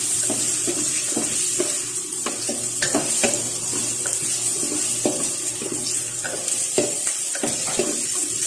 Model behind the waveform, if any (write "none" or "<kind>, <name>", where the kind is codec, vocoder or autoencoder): none